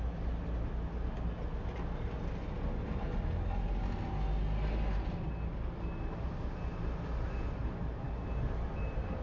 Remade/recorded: recorded